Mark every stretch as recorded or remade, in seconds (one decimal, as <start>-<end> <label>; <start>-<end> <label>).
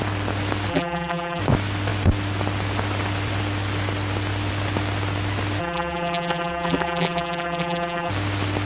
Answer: 0.0-0.7 recorded; 0.7-1.4 remade; 1.4-5.6 recorded; 5.6-8.1 remade; 8.1-8.7 recorded